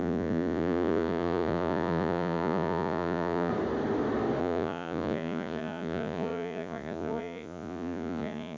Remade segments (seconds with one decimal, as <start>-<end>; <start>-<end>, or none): 0.0-3.5; 4.4-8.6